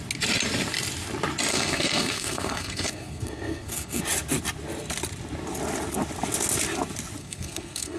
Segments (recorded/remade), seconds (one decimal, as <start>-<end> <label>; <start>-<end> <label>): 0.0-1.5 recorded; 1.5-4.0 remade; 4.0-7.2 recorded; 7.2-8.0 remade